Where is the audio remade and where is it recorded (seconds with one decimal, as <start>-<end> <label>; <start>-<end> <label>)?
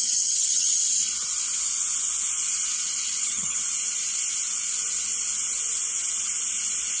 0.0-0.8 remade; 0.8-3.2 recorded; 3.2-3.6 remade; 3.6-7.0 recorded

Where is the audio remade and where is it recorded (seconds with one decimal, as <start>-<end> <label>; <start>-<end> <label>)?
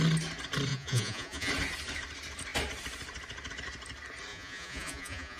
0.0-0.7 recorded; 0.7-1.5 remade; 1.5-4.3 recorded; 4.3-5.4 remade